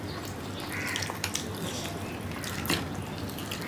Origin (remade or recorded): recorded